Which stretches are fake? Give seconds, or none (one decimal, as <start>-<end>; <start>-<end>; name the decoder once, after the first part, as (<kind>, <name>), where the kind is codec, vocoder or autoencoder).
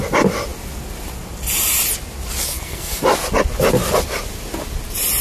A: 2.4-3.0 (codec, SNAC)